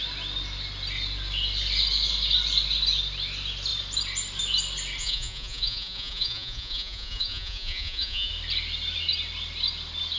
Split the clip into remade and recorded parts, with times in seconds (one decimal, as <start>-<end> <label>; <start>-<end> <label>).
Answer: 0.0-5.0 recorded; 5.0-8.3 remade; 8.3-10.2 recorded